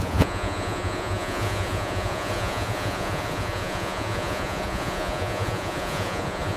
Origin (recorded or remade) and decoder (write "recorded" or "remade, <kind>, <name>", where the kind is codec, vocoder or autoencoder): remade, vocoder, Vocos